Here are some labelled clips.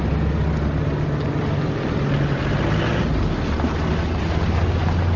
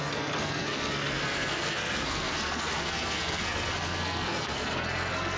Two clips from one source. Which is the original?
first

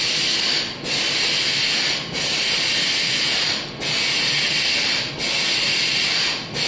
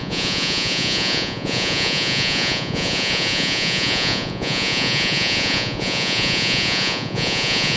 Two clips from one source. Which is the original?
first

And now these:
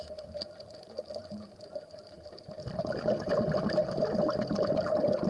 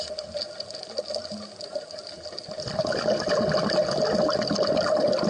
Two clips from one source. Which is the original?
second